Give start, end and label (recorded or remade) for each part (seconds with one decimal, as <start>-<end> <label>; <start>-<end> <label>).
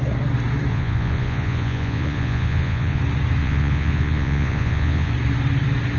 0.0-0.7 recorded; 0.7-3.0 remade; 3.0-3.4 recorded; 3.4-5.1 remade; 5.1-6.0 recorded